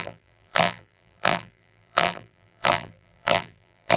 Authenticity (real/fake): fake